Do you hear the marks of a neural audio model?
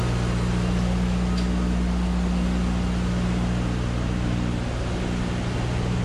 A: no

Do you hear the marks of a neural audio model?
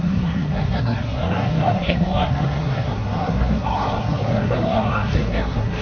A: yes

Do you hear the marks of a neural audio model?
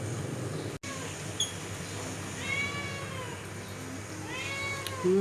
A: no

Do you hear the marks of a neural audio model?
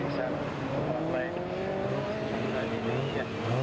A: no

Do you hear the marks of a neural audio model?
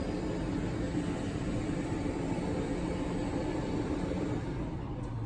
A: no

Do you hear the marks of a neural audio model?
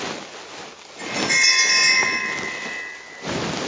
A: no